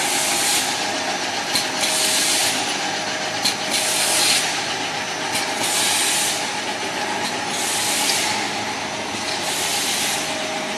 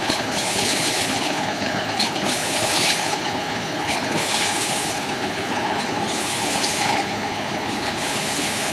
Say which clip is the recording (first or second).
first